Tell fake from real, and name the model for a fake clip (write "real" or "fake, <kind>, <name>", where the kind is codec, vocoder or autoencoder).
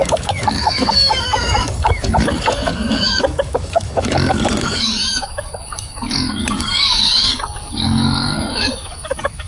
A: fake, codec, DAC